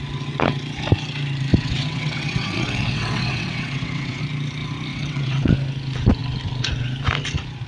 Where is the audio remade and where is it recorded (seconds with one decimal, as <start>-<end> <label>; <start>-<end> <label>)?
0.0-1.5 recorded; 1.5-4.2 remade; 4.2-4.9 recorded; 4.9-5.5 remade; 5.5-7.7 recorded